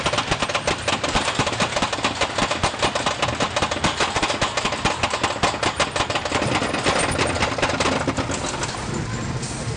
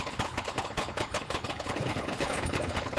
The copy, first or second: second